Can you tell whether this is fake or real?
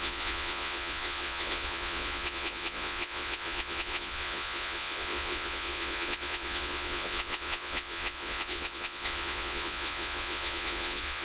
fake